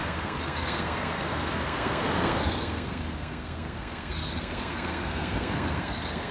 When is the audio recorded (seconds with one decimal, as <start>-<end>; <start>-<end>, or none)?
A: none